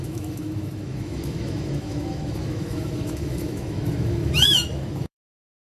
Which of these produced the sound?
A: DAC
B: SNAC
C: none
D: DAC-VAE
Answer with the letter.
D